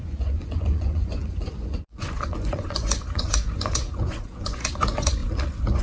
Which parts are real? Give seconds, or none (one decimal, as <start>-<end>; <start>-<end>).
5.2-5.8